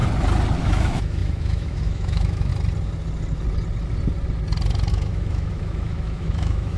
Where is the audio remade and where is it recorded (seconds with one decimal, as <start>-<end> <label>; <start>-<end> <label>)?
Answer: 0.0-0.6 recorded; 0.6-2.5 remade; 2.5-4.9 recorded; 4.9-6.8 remade